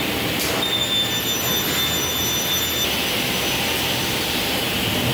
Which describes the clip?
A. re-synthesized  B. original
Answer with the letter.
B